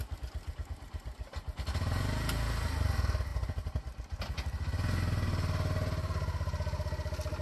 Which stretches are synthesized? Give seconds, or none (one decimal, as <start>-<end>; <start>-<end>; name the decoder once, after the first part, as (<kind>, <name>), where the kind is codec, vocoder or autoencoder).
none